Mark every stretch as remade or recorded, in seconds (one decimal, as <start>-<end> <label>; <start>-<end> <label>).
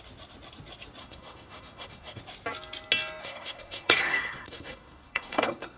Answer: 0.0-1.0 recorded; 1.0-2.2 remade; 2.2-3.2 recorded; 3.2-5.8 remade